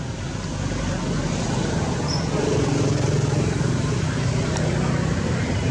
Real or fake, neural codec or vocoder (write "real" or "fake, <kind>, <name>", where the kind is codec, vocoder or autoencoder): real